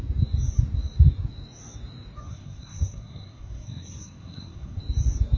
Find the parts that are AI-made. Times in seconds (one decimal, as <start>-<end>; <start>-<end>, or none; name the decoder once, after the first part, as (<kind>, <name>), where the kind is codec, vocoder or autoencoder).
2.3-4.8 (codec, SNAC)